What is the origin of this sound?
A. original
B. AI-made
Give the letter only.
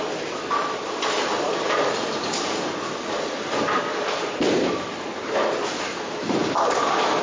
B